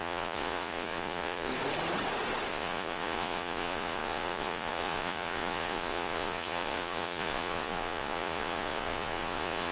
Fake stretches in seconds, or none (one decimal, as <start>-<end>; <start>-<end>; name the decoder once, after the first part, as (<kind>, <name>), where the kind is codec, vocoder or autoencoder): 0.0-1.5 (vocoder, Vocos); 2.5-9.7